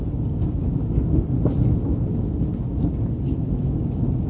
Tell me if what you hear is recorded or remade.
recorded